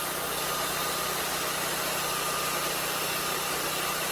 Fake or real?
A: real